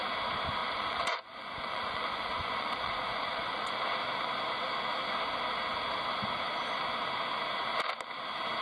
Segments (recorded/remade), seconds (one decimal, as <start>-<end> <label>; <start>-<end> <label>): 0.0-0.6 recorded; 0.6-3.7 remade; 3.7-8.6 recorded